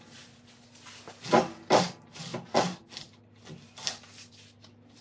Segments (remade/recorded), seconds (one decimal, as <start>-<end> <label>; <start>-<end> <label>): 0.0-5.0 recorded